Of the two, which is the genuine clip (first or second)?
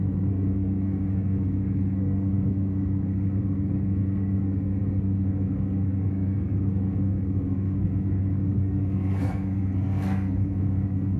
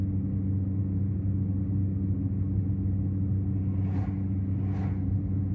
second